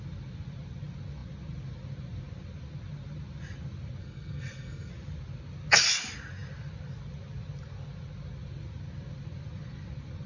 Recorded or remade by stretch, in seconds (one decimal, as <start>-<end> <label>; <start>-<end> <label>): 0.0-4.0 recorded; 4.0-4.9 remade; 4.9-10.3 recorded